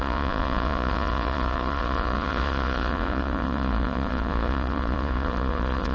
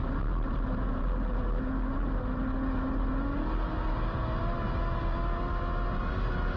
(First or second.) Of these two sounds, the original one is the second